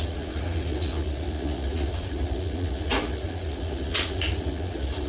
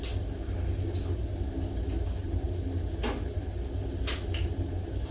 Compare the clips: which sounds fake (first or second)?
first